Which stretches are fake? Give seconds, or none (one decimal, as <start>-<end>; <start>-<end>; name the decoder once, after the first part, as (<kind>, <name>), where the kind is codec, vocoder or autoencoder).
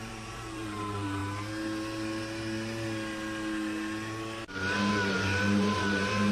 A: 0.0-1.2 (vocoder, BigVGAN v2); 4.9-6.3